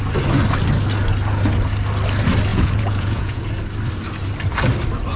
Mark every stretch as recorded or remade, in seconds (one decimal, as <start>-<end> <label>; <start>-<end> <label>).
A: 0.0-2.5 recorded; 2.5-3.5 remade; 3.5-5.2 recorded